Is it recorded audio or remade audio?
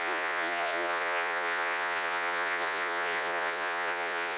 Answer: remade